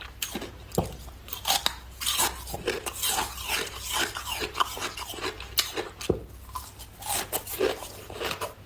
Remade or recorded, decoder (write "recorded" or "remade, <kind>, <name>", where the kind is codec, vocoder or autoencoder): recorded